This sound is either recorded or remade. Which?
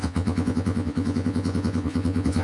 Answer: remade